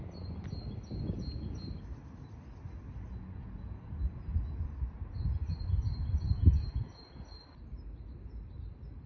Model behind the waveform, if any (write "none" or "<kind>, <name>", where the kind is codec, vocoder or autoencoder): none